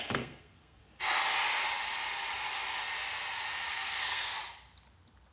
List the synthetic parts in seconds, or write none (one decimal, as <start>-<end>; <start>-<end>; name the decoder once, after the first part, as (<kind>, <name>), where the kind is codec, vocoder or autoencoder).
0.0-0.8 (codec, SNAC); 3.7-4.3